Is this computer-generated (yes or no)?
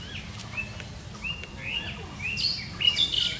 no